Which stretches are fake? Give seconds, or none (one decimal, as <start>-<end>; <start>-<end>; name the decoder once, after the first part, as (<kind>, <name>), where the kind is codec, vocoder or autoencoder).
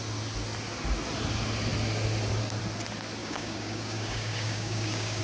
3.2-5.2 (codec, DAC)